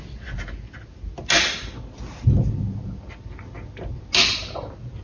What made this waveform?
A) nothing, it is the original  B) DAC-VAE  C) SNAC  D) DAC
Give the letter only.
A